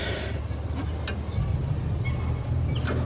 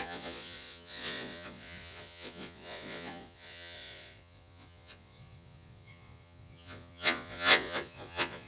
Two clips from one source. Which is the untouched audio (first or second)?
first